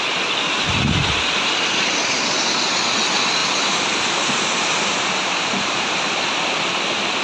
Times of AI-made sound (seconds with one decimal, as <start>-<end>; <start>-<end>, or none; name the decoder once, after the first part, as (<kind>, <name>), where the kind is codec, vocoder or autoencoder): 3.4-6.2 (vocoder, BigVGAN v2)